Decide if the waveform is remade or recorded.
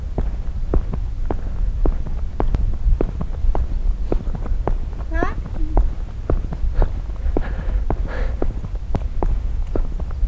recorded